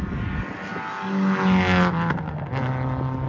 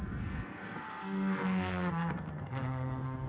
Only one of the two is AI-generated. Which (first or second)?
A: second